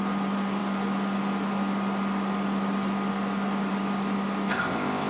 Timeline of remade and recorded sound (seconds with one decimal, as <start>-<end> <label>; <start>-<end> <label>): 0.0-4.5 recorded; 4.5-5.1 remade